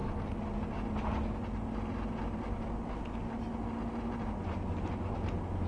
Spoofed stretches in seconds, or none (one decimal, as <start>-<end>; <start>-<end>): none

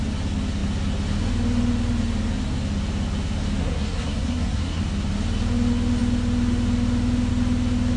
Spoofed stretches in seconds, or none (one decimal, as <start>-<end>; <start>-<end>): 3.6-4.8

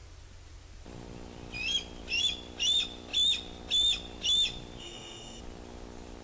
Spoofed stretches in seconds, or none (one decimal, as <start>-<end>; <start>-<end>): 4.8-5.4

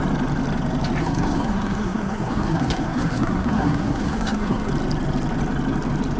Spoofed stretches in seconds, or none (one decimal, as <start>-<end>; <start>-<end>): 1.0-4.7

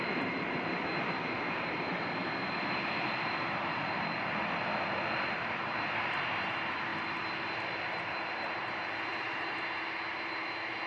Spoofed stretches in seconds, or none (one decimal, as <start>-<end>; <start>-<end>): none

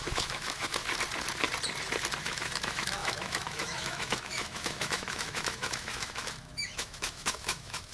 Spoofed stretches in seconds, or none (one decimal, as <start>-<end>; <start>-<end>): 0.0-0.8; 2.2-7.9

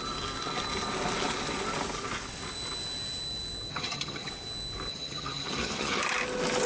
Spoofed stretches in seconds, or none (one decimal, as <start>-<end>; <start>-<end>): 3.7-4.3; 4.9-6.0